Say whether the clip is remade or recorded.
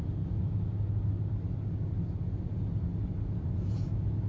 recorded